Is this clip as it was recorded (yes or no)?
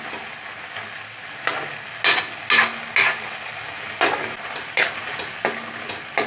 yes